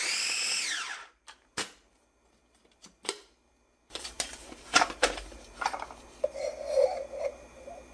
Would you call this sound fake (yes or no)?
yes